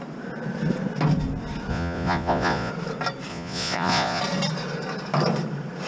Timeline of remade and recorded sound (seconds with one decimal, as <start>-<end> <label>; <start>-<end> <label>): 0.0-1.7 recorded; 1.7-2.7 remade; 2.7-3.3 recorded; 3.3-4.2 remade; 4.2-5.9 recorded